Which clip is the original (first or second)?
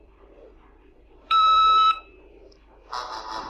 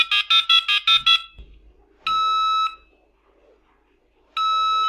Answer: second